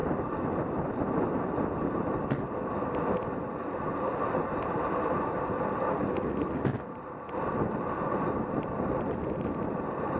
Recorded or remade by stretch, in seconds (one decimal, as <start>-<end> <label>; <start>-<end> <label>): 0.0-10.2 recorded